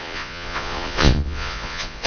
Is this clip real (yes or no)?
no